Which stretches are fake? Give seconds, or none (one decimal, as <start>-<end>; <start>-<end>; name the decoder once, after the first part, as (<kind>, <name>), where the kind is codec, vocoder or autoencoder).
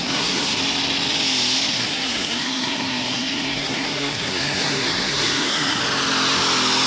0.0-0.6 (codec, SNAC); 1.7-5.8